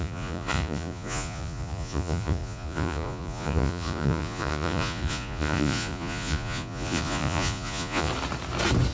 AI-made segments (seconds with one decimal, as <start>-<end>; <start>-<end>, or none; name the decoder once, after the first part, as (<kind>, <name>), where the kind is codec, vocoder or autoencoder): 0.0-8.1 (vocoder, Vocos)